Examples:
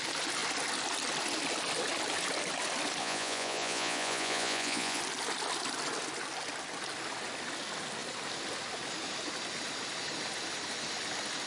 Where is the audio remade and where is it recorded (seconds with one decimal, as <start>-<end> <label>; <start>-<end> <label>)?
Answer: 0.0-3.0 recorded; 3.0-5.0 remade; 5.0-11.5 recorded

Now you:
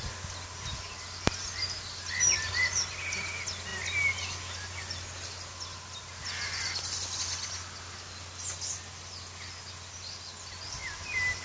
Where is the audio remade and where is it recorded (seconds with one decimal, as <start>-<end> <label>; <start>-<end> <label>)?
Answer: 0.0-11.4 recorded

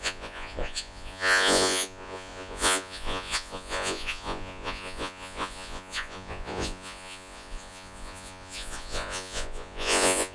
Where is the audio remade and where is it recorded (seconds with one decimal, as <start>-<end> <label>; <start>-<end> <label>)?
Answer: 0.0-10.3 remade

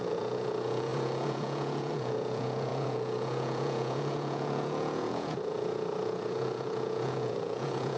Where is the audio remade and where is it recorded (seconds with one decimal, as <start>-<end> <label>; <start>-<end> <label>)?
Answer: 0.0-8.0 remade

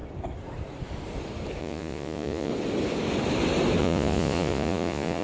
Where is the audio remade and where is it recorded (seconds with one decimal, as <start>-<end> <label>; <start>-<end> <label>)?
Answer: 0.0-1.6 recorded; 1.6-2.5 remade; 2.5-3.8 recorded; 3.8-5.2 remade

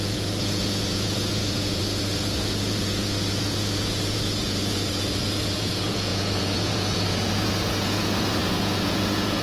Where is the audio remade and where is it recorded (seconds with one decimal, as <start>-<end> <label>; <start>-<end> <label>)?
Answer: 0.0-9.4 remade

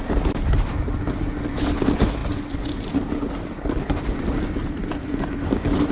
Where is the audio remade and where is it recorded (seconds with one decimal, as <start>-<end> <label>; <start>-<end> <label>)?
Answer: 0.0-5.9 recorded